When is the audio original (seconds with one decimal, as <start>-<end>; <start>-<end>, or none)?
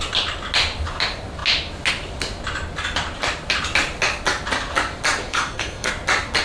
0.0-5.3; 5.9-6.4